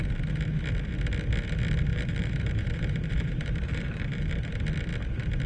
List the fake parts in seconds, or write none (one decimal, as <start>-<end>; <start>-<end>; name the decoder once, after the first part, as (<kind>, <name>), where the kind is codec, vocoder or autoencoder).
1.9-4.5 (vocoder, BigVGAN v2)